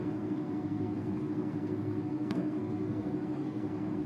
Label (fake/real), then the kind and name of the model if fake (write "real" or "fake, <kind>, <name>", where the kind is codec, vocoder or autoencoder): fake, codec, SNAC